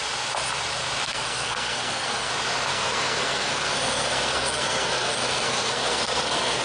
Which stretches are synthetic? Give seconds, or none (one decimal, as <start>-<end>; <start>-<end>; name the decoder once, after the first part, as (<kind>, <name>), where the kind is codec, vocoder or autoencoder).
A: 1.1-2.3 (codec, SNAC); 2.7-6.6